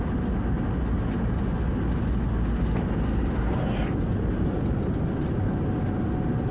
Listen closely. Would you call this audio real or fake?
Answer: real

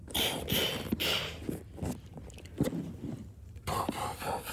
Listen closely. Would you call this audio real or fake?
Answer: real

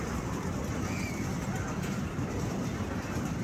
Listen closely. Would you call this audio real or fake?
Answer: fake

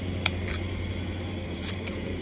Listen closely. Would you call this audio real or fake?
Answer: fake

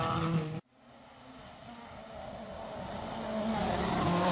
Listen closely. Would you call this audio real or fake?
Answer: real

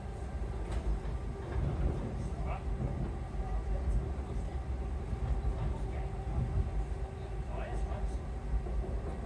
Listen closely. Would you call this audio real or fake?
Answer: real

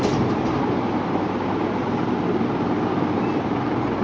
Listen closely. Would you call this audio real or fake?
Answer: real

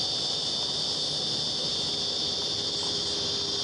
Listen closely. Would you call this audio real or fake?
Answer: real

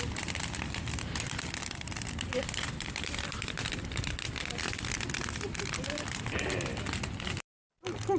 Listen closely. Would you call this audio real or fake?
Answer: fake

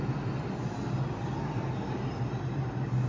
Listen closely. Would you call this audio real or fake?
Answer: real